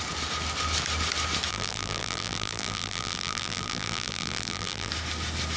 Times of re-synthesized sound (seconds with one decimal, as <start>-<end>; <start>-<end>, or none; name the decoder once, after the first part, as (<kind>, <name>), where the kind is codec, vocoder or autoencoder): 1.5-4.9 (vocoder, BigVGAN v2)